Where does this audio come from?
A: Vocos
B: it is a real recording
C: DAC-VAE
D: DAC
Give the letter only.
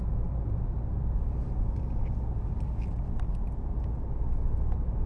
B